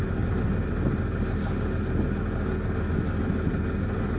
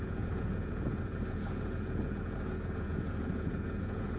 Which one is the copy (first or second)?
second